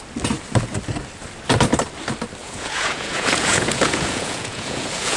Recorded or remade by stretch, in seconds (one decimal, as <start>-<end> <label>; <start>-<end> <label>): 0.0-2.4 recorded; 2.4-5.2 remade

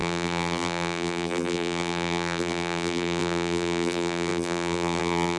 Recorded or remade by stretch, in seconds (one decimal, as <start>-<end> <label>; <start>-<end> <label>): 0.0-5.4 remade

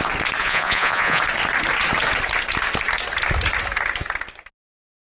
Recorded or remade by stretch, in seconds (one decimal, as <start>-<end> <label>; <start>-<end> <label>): 0.0-0.4 recorded; 0.4-1.2 remade; 1.2-5.1 recorded

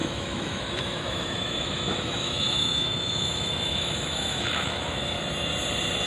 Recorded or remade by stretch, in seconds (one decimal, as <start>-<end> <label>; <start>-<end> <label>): 0.0-5.0 remade; 5.0-6.1 recorded

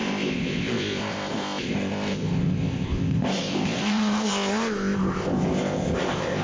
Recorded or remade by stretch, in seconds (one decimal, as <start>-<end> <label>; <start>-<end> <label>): 0.0-6.4 remade

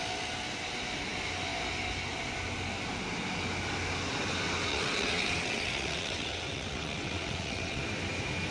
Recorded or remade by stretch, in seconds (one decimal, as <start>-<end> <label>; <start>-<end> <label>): 0.0-4.7 recorded; 4.7-7.8 remade; 7.8-8.5 recorded

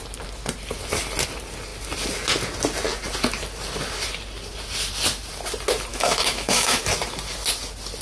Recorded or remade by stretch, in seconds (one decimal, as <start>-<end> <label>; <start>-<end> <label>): 0.0-5.9 recorded; 5.9-6.8 remade; 6.8-8.0 recorded